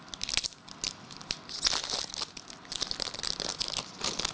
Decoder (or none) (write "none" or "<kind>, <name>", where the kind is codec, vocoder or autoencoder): none